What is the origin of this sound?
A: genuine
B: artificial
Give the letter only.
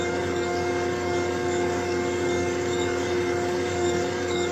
B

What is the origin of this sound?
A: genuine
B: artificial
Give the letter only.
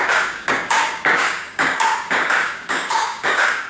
B